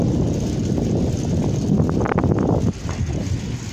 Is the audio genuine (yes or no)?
yes